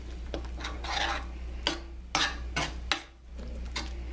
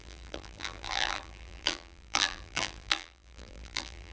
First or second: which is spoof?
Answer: second